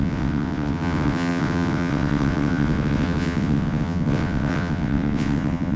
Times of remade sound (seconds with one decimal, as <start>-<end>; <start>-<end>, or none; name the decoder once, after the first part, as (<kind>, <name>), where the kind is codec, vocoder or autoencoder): 0.0-5.8 (vocoder, WaveNeXt)